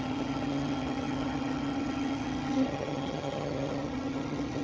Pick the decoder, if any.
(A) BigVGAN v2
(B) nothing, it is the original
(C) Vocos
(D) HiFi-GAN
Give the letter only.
D